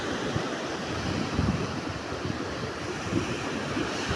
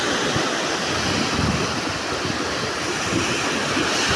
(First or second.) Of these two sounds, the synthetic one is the first